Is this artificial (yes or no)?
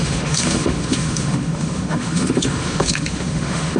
yes